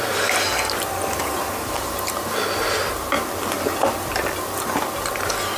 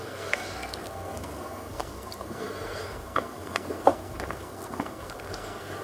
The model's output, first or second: second